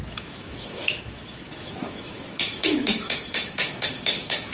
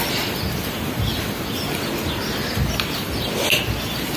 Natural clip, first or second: second